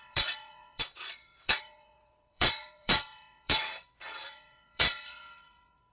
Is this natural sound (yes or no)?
no